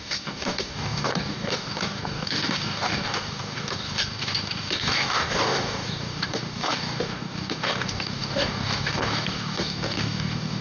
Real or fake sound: fake